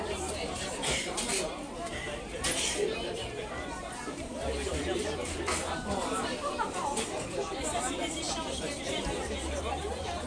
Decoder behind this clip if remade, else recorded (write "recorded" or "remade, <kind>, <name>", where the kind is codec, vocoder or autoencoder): remade, vocoder, BigVGAN v2